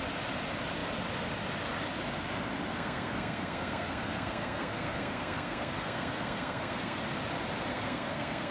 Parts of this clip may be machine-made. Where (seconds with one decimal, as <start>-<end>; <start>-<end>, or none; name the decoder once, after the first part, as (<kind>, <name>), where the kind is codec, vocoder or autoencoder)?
2.7-7.0 (codec, SNAC); 7.7-8.5